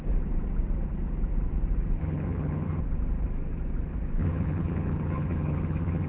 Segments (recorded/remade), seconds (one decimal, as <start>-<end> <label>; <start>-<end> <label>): 0.0-2.0 recorded; 2.0-2.8 remade; 2.8-4.2 recorded; 4.2-6.1 remade